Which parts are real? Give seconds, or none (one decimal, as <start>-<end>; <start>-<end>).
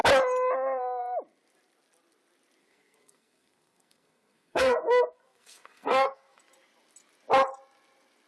0.0-2.6; 6.4-8.3